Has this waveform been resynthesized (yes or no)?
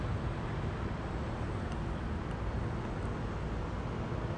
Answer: no